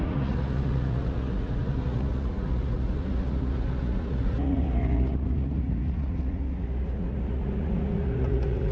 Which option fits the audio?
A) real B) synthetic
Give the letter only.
B